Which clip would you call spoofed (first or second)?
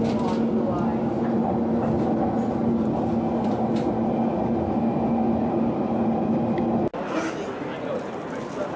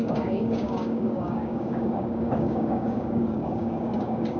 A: second